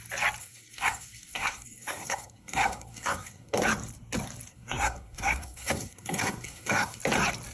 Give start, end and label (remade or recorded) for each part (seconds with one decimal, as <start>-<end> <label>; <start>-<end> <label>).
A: 0.0-0.4 recorded; 0.4-3.6 remade; 3.6-4.5 recorded; 4.5-7.0 remade; 7.0-7.5 recorded